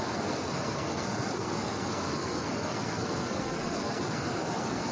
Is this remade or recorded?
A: remade